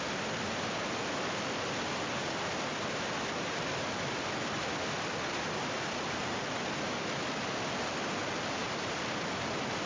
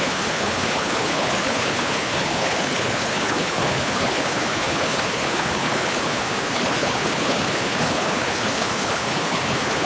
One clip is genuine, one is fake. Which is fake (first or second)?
second